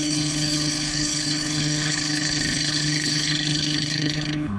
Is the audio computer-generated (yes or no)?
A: yes